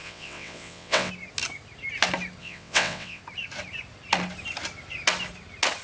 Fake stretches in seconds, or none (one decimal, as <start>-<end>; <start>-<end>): 0.0-1.1; 2.4-3.2

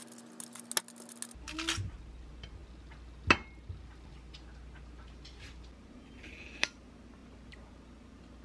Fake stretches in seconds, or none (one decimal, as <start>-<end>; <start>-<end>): none

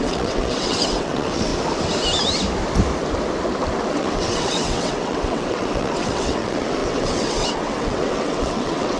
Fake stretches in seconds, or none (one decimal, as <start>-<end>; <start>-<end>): 0.0-1.5; 3.9-9.0

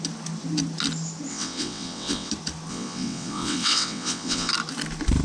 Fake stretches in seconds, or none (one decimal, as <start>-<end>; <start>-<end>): 1.3-2.3; 2.7-4.5

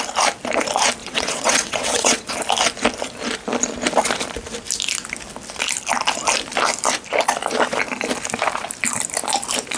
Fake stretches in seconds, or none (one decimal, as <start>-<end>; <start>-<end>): 1.0-2.3

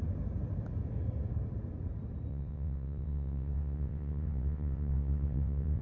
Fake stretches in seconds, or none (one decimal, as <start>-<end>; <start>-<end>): 2.3-5.8